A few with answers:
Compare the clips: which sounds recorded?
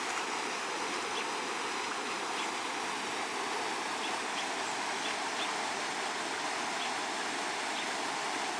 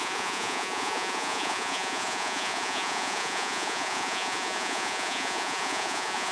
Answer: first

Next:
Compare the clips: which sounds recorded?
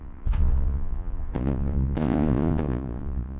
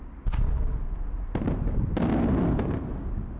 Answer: second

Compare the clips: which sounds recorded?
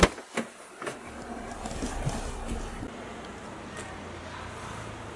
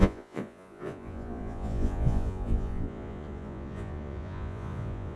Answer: first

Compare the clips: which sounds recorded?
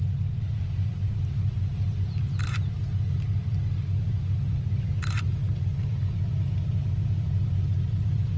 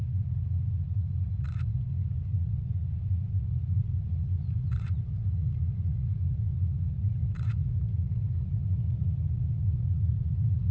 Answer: first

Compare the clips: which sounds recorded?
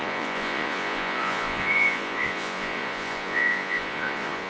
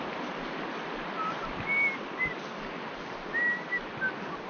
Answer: second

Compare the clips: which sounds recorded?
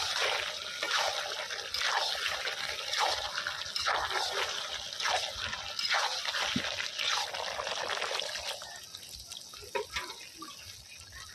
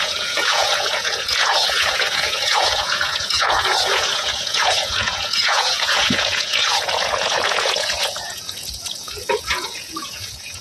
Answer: first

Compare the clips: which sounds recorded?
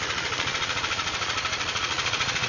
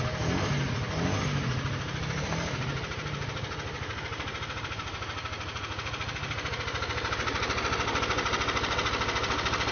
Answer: second